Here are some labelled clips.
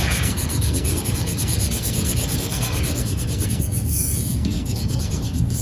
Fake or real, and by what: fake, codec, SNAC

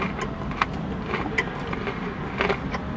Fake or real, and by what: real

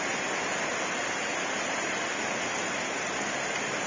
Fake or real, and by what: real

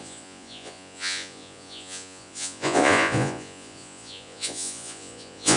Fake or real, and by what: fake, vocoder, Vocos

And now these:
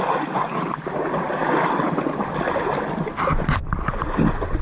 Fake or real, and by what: real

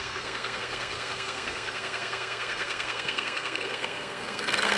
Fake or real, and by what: fake, codec, SNAC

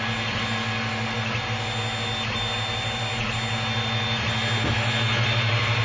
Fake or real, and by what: real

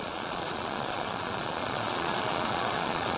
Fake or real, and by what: fake, vocoder, Vocos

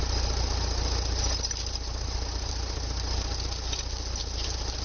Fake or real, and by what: real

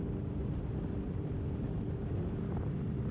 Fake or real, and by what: real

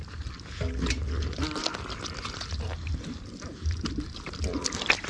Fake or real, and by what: real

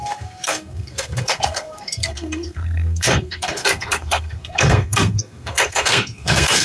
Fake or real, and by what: fake, codec, SNAC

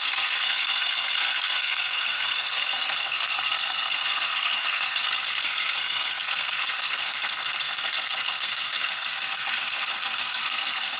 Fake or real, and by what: fake, codec, SNAC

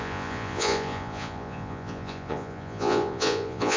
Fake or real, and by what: fake, vocoder, Vocos